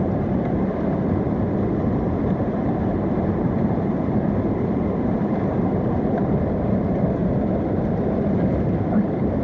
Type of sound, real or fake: fake